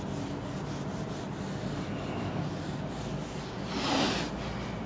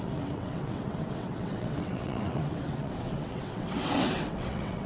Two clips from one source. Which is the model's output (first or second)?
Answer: second